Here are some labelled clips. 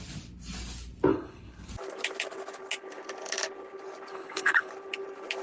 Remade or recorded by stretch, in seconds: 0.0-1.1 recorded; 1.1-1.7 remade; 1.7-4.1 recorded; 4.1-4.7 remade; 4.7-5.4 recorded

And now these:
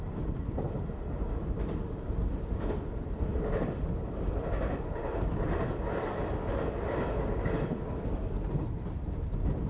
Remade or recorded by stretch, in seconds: 0.0-9.7 recorded

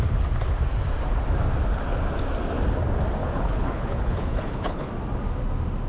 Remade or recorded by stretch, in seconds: 0.0-3.2 recorded; 3.2-4.9 remade; 4.9-5.9 recorded

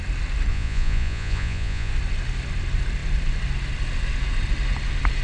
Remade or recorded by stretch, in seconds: 0.0-0.5 recorded; 0.5-1.9 remade; 1.9-5.2 recorded

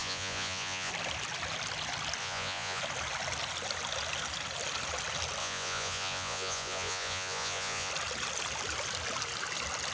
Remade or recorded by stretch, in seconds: 0.0-0.9 remade; 0.9-2.2 recorded; 2.2-2.8 remade; 2.8-5.4 recorded; 5.4-7.9 remade; 7.9-9.9 recorded

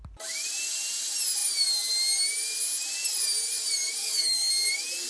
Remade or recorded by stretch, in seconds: 0.0-4.0 recorded; 4.0-4.5 remade; 4.5-5.1 recorded

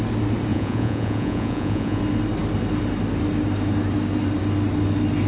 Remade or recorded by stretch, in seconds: 0.0-0.5 recorded; 0.5-2.0 remade; 2.0-5.3 recorded

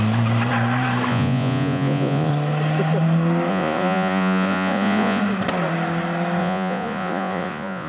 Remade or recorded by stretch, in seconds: 0.0-1.1 recorded; 1.1-2.3 remade; 2.3-3.5 recorded; 3.5-5.2 remade; 5.2-6.4 recorded; 6.4-7.9 remade